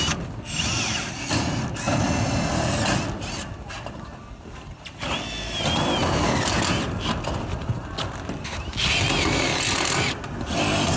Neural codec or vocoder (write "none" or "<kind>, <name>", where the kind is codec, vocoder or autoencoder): none